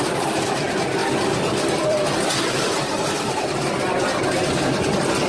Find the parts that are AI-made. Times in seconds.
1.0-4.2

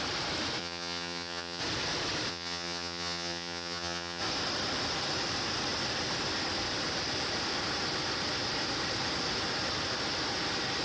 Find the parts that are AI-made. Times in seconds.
0.6-1.6; 2.3-4.2

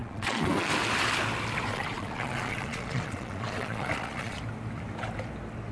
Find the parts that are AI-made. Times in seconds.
0.0-0.7; 1.7-4.4

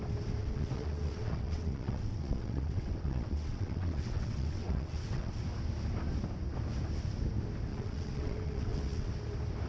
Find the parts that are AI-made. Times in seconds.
0.4-5.4; 7.7-9.1

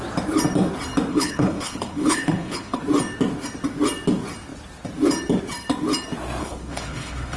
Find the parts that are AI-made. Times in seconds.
1.1-2.8; 6.4-7.4

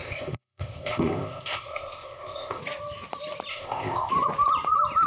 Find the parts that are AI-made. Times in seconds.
0.0-2.6; 3.5-4.1